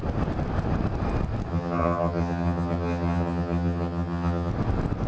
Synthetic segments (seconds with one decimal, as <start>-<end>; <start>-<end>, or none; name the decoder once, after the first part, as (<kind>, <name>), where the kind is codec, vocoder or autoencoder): 1.5-4.5 (vocoder, HiFi-GAN)